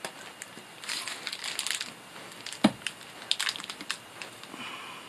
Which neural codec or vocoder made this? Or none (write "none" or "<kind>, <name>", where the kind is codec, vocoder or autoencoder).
none